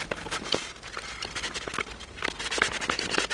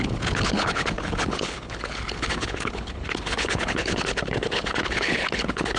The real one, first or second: first